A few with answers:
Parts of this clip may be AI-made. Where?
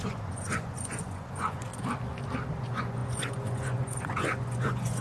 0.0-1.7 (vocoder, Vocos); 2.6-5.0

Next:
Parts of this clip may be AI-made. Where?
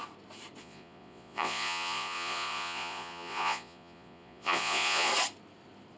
0.6-5.1 (vocoder, Vocos)